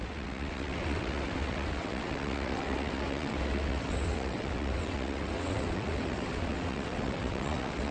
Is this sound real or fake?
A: fake